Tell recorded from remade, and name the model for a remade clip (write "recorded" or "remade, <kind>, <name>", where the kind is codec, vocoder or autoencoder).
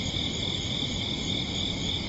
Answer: recorded